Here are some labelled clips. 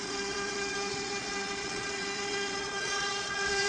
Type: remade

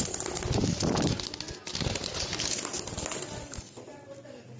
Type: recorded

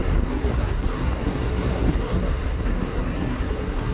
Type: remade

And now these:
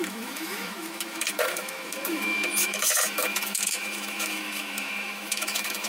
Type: remade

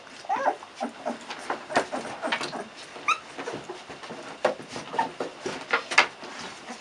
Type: recorded